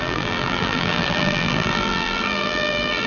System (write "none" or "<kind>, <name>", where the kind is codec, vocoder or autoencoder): vocoder, BigVGAN v2